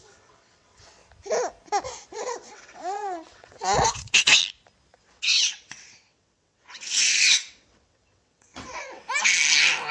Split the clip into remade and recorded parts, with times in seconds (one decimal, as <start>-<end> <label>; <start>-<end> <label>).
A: 0.0-1.0 remade; 1.0-2.1 recorded; 2.1-4.4 remade; 4.4-5.0 recorded; 5.0-9.0 remade; 9.0-9.9 recorded